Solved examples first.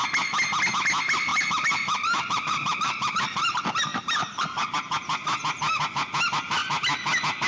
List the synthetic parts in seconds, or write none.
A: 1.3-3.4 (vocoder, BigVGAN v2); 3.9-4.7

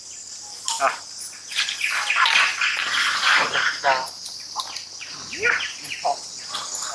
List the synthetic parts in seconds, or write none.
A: none

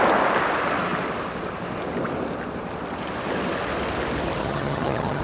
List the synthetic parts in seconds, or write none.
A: 4.4-5.2 (vocoder, HiFi-GAN)

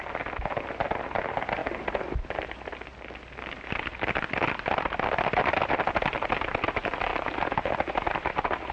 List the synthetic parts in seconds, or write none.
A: none

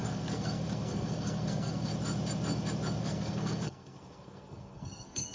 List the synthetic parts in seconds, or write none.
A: 0.0-1.9 (codec, SNAC); 3.0-5.3

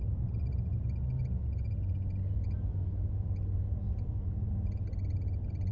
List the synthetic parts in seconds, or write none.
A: 0.0-0.7 (vocoder, BigVGAN v2); 3.1-5.7

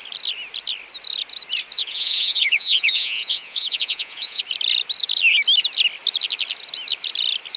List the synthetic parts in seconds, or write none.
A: 1.8-4.4 (vocoder, Vocos)

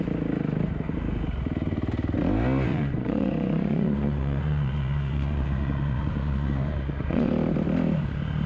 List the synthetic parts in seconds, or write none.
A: 2.7-7.3 (vocoder, Vocos)